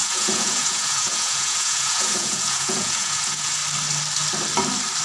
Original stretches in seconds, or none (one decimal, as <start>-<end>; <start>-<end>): 3.6-5.0